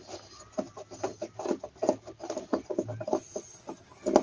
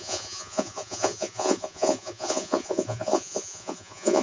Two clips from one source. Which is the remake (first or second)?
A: second